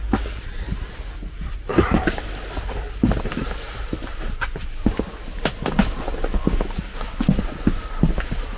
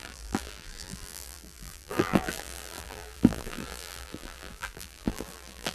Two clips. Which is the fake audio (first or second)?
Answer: second